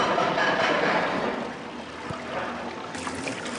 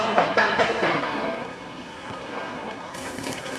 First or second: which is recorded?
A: first